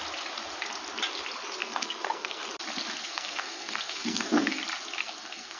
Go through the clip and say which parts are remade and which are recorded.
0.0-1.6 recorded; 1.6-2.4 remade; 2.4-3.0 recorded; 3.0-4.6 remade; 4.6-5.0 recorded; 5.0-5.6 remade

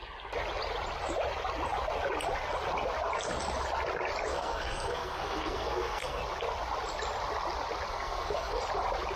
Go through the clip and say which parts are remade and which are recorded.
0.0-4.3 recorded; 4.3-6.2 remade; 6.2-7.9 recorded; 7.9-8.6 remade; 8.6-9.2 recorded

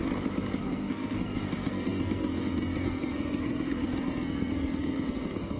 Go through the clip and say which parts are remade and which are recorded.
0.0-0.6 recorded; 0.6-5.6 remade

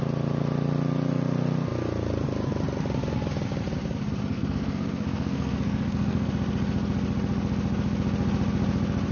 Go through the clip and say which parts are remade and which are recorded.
0.0-4.3 recorded; 4.3-6.3 remade; 6.3-9.1 recorded

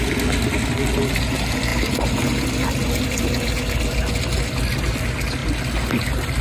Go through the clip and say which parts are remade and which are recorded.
0.0-6.4 recorded

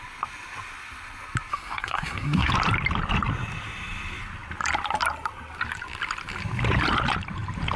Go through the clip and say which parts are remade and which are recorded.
0.0-1.5 recorded; 1.5-2.5 remade; 2.5-7.8 recorded